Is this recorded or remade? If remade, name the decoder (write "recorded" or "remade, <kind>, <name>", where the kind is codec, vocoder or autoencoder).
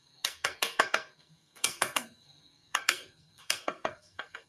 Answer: remade, codec, SNAC